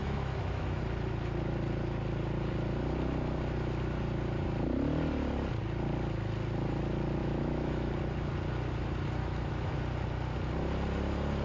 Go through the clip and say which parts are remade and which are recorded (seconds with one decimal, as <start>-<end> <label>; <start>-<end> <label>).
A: 0.0-0.8 remade; 0.8-7.2 recorded; 7.2-7.9 remade; 7.9-9.2 recorded; 9.2-9.8 remade; 9.8-11.4 recorded